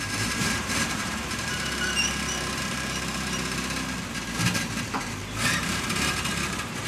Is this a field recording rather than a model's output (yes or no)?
no